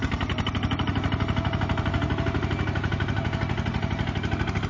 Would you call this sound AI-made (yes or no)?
no